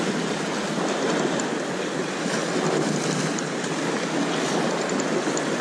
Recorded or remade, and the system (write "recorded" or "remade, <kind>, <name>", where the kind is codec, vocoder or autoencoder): recorded